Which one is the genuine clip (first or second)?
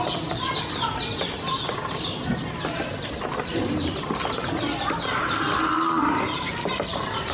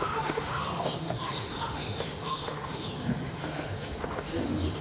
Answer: first